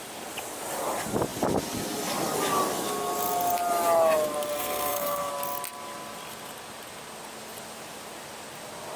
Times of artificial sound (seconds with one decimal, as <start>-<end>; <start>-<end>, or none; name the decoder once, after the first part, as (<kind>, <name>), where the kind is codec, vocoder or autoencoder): 4.6-5.3 (codec, SNAC)